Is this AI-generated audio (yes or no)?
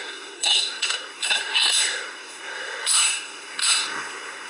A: yes